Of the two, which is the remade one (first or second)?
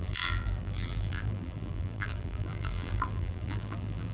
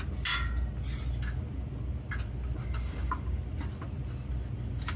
first